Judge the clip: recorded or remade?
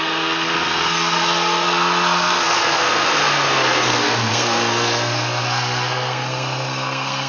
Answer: remade